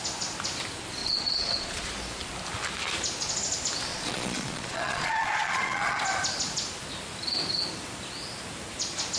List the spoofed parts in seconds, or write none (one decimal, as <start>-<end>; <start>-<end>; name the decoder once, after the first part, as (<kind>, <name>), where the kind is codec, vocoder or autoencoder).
1.0-1.9 (vocoder, Vocos); 3.9-6.0